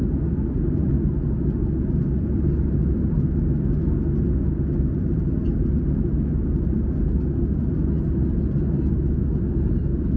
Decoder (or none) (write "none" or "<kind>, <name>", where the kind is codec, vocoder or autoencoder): none